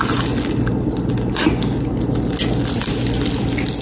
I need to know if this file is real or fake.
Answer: real